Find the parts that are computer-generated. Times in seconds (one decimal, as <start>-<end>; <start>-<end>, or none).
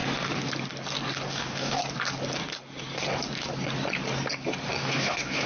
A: 1.3-1.8; 4.7-5.5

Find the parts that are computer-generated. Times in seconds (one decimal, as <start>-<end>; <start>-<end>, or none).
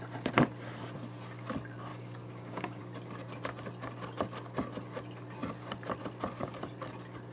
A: 1.9-2.8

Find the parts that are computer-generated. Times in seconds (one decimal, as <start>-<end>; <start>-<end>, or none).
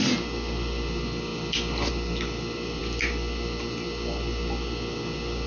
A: none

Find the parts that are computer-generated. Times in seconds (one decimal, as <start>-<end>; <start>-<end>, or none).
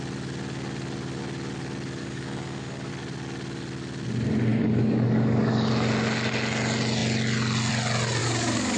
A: 2.0-2.9; 4.5-5.7; 8.2-8.8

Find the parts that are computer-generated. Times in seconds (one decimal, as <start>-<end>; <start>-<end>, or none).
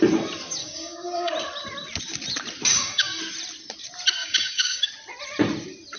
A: 0.6-1.3; 2.7-3.2; 4.2-4.9